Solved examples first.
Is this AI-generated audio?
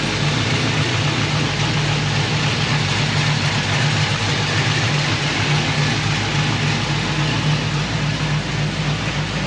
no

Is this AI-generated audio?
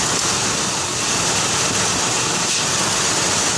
no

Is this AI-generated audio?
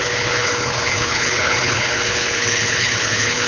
yes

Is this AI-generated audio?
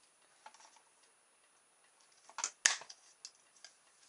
no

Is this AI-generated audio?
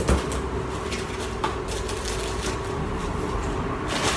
no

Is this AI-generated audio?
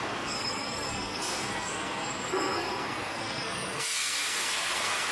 yes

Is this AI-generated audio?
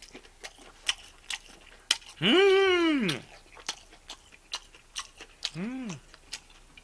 no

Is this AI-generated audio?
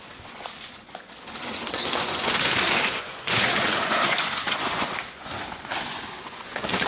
yes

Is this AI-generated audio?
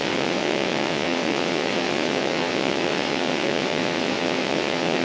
yes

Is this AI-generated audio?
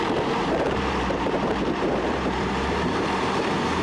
yes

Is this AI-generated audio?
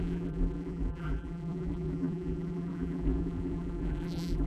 yes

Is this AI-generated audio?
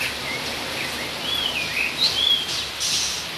no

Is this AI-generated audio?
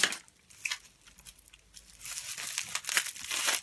no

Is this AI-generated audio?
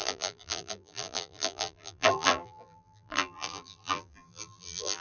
yes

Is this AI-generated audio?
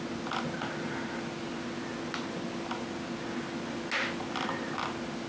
no